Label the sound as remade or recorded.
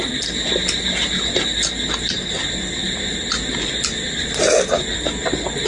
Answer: recorded